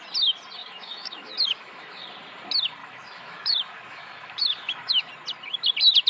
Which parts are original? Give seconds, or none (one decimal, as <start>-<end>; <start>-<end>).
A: 0.0-0.6; 2.0-2.8; 5.1-6.1